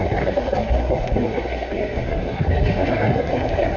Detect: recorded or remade remade